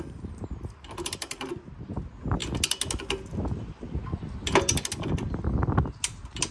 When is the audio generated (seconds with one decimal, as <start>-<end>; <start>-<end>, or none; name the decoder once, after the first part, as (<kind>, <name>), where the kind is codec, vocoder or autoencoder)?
none